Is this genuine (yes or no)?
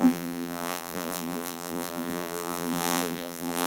no